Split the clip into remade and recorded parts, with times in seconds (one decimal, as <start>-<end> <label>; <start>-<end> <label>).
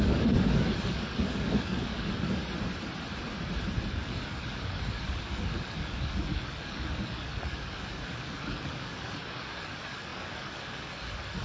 0.0-2.4 remade; 2.4-3.9 recorded; 3.9-11.4 remade